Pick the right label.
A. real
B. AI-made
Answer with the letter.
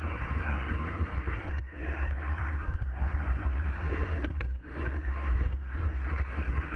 B